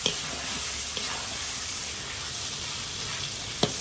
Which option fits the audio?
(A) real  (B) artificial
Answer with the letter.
A